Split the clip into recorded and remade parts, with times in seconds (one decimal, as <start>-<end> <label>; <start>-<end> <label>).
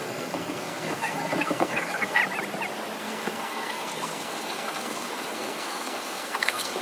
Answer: 0.0-2.2 remade; 2.2-3.0 recorded; 3.0-6.8 remade